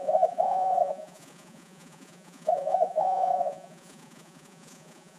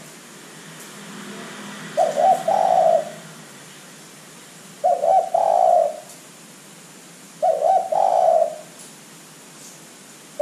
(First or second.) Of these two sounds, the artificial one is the first